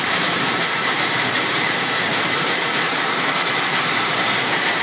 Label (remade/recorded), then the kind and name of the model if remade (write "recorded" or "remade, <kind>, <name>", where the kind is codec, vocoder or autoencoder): remade, vocoder, BigVGAN v2